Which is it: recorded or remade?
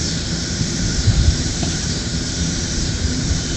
remade